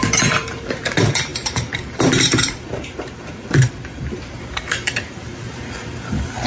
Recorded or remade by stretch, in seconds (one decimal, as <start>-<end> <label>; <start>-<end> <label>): 0.0-6.5 remade